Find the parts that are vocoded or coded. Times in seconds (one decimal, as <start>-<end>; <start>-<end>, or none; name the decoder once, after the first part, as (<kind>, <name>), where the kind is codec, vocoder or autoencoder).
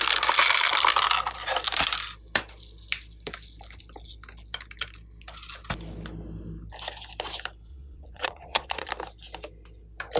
7.7-8.9 (vocoder, Vocos)